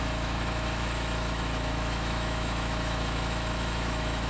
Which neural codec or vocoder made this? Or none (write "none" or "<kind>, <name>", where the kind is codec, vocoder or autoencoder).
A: autoencoder, DAC-VAE